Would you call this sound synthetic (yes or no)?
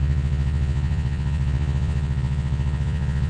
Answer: yes